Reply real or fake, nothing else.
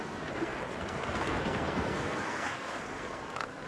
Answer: fake